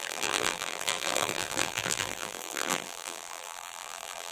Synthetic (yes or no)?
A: yes